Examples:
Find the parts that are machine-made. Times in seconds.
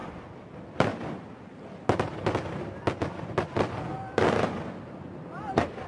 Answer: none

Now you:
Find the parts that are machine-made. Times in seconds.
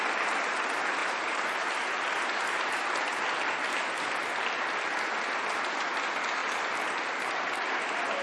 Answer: 1.0-1.9 (vocoder, BigVGAN v2); 6.4-7.4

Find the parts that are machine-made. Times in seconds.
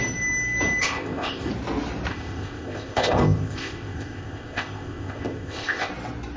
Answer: 0.8-1.5 (codec, ZipCodec); 2.1-5.9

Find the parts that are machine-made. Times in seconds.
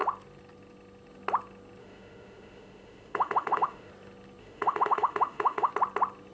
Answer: 1.8-3.9 (autoencoder, DAC-VAE); 4.4-5.7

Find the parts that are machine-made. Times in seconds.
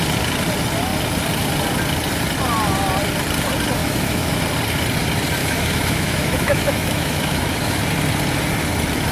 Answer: 3.8-4.4 (autoencoder, DAC-VAE); 5.4-7.8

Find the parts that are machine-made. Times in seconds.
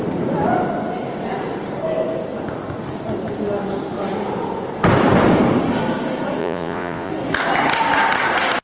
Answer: 6.4-7.1 (vocoder, Vocos)